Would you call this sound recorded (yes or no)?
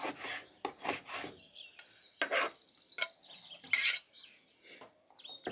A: yes